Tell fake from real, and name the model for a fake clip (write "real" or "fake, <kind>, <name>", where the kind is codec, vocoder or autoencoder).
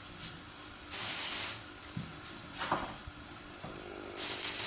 fake, vocoder, BigVGAN v2